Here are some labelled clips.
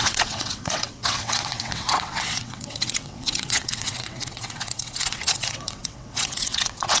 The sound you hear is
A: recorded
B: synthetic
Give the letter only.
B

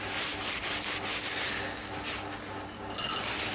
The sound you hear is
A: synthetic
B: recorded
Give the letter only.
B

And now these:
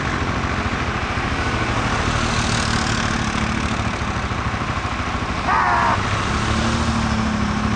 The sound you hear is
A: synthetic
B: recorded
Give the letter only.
B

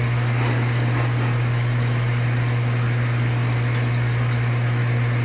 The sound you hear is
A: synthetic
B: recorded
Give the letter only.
B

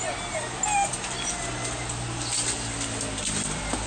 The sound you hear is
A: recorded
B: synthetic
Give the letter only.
A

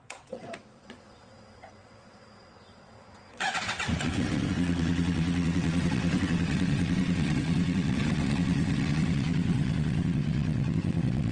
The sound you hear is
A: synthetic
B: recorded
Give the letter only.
A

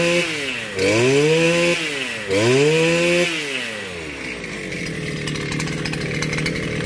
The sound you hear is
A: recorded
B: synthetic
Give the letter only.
A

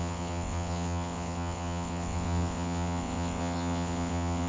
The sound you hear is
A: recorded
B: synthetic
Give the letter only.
B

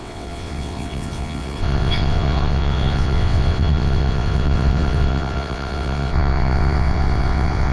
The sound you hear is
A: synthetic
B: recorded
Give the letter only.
A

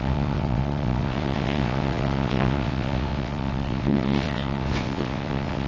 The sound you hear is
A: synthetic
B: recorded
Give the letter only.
A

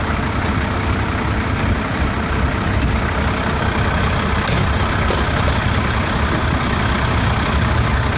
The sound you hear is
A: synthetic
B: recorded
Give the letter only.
B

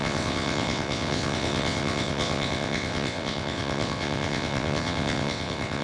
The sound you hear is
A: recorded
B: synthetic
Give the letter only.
B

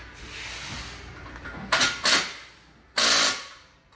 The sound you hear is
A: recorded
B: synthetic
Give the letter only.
A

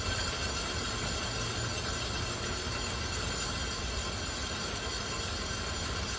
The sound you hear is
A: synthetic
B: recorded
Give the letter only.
B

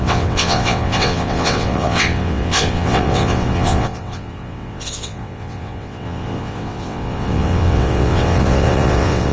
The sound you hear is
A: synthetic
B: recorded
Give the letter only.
A